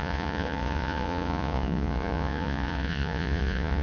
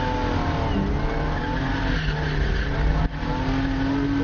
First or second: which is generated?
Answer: first